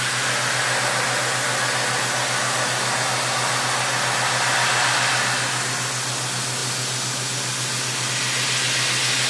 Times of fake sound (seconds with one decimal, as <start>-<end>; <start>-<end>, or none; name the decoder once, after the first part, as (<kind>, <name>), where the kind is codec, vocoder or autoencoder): none